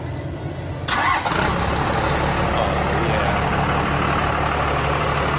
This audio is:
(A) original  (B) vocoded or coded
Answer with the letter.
A